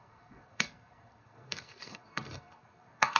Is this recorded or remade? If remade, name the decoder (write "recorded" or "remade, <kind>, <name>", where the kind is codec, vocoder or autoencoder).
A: remade, codec, SNAC